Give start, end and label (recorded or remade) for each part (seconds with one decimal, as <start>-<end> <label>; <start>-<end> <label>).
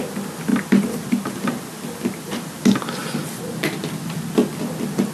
0.0-5.1 recorded